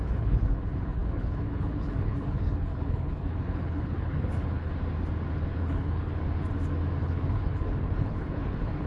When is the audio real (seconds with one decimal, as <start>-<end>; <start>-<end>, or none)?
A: 4.7-5.5; 6.2-7.0